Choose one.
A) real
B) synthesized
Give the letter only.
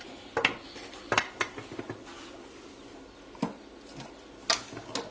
A